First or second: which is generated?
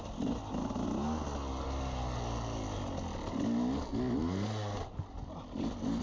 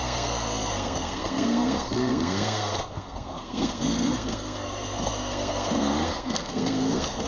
second